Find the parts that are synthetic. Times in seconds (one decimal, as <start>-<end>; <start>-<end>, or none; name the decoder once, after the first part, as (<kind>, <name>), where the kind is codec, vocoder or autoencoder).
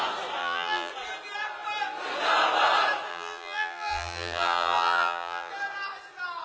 0.4-0.9 (vocoder, BigVGAN v2); 3.1-5.5